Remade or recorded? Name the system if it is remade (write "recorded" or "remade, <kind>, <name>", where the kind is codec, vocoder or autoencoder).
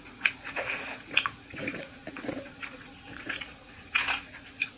remade, vocoder, Vocos